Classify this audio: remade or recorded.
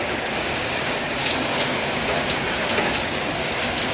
remade